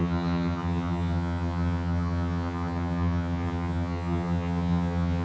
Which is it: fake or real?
fake